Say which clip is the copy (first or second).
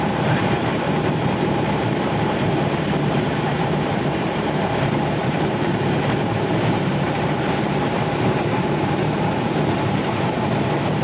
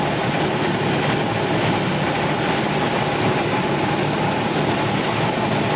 first